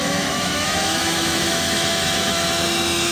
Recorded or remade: remade